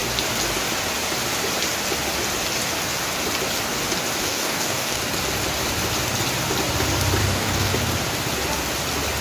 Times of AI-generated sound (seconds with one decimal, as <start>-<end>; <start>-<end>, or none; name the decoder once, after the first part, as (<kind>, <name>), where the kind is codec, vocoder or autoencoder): 4.2-5.0 (codec, DAC); 7.2-7.7